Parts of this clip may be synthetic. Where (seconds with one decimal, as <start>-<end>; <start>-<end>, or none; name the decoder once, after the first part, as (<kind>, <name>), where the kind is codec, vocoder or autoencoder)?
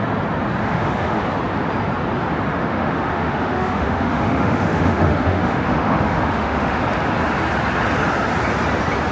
0.6-1.2 (autoencoder, DAC-VAE); 2.5-6.8